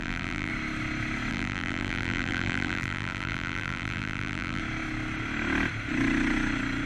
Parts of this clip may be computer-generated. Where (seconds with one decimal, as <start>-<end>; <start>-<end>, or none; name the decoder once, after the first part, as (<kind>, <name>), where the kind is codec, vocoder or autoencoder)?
0.0-0.5 (vocoder, BigVGAN v2); 1.3-4.6